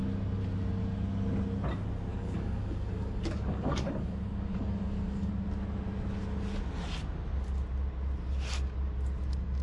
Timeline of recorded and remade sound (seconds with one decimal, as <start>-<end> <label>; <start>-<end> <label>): 0.0-2.1 recorded; 2.1-5.3 remade; 5.3-9.6 recorded